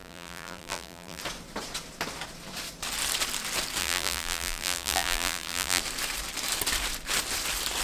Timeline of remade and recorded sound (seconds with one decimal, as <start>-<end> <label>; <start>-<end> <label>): 0.0-1.2 remade; 1.2-3.8 recorded; 3.8-5.8 remade; 5.8-7.8 recorded